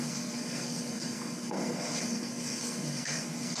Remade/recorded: remade